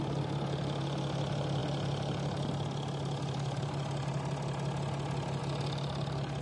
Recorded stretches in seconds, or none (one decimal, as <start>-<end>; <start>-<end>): 0.0-6.4